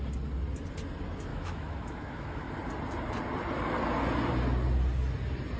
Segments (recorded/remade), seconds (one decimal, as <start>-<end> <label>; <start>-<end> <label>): 0.0-1.3 recorded; 1.3-2.5 remade; 2.5-5.6 recorded